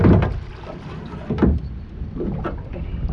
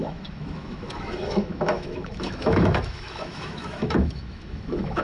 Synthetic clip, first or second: second